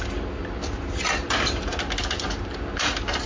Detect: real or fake real